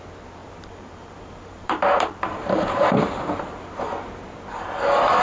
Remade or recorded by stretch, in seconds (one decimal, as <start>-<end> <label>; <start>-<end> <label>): 0.0-0.4 recorded; 0.4-3.5 remade; 3.5-5.2 recorded